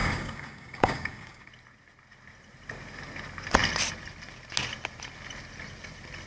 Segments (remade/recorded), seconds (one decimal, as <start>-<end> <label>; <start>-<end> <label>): 0.0-1.5 remade; 1.5-6.3 recorded